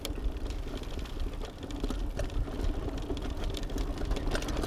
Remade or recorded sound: recorded